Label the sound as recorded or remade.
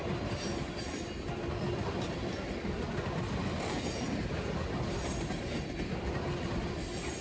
recorded